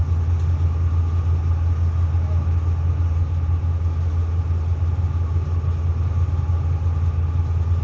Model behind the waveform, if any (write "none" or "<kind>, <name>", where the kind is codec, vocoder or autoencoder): none